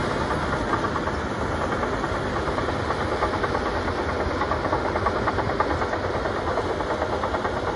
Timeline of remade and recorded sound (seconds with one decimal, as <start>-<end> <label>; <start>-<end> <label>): 0.0-7.8 recorded